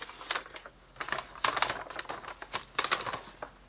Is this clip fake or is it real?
real